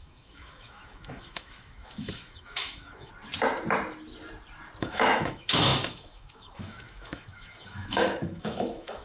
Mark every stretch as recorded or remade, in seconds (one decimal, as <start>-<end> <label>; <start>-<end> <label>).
0.0-3.1 remade; 3.1-4.8 recorded; 4.8-9.0 remade

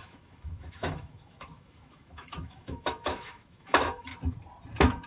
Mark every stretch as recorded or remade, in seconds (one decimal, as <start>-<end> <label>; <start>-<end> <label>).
0.0-4.1 remade; 4.1-5.1 recorded